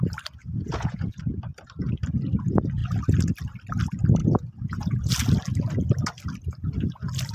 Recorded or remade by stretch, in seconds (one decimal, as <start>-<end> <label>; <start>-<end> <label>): 0.0-0.4 recorded; 0.4-1.2 remade; 1.2-4.2 recorded; 4.2-5.1 remade; 5.1-7.3 recorded